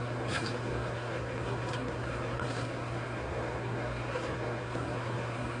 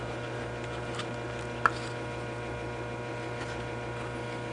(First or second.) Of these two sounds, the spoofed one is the first